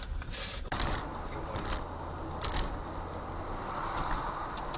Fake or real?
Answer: real